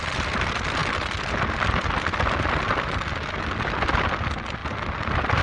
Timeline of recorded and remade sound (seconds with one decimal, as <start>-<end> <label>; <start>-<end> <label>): 0.0-5.4 recorded